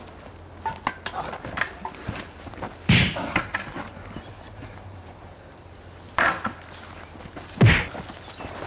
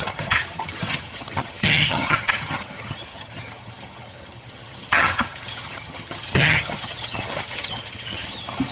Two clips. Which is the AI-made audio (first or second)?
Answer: second